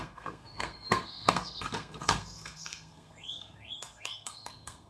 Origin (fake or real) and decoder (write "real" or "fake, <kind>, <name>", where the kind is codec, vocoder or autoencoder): fake, codec, SNAC